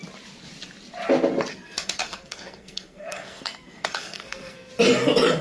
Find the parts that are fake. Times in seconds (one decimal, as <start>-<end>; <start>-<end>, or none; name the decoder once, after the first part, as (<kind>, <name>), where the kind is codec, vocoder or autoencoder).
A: 1.5-4.7 (codec, SNAC)